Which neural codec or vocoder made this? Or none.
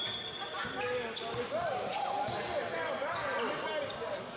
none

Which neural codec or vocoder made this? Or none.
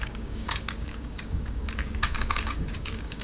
codec, DAC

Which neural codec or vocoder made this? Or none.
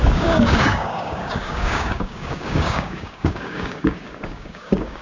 codec, DAC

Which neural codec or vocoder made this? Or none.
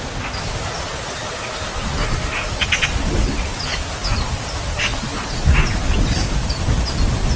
none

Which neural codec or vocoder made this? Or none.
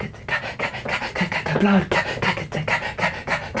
none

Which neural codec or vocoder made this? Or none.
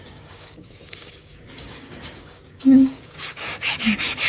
codec, DAC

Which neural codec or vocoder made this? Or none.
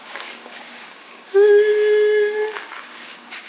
codec, DAC